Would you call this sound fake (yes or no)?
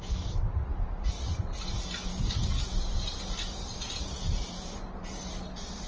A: no